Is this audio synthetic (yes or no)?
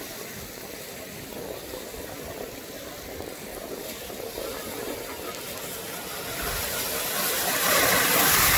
no